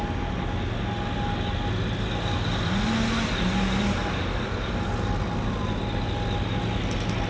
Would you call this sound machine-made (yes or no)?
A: no